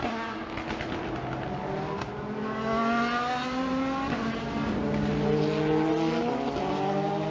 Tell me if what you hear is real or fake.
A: real